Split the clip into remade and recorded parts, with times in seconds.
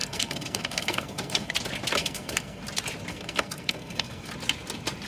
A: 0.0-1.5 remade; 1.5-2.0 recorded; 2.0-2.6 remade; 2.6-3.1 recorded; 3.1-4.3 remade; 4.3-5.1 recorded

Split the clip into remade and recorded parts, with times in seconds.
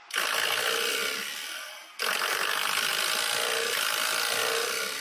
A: 0.0-5.0 recorded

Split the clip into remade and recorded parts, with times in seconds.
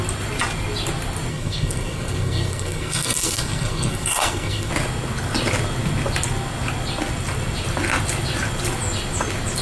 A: 0.0-1.3 recorded; 1.3-4.7 remade; 4.7-9.6 recorded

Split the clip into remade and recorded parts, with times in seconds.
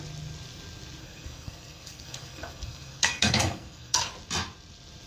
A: 0.0-1.0 recorded; 1.0-4.1 remade; 4.1-5.1 recorded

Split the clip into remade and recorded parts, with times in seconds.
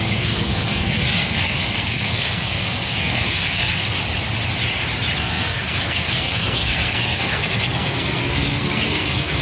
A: 0.0-4.0 remade; 4.0-5.2 recorded; 5.2-9.4 remade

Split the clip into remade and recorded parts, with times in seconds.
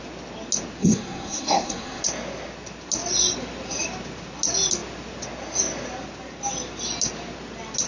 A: 0.0-0.8 recorded; 0.8-2.0 remade; 2.0-7.9 recorded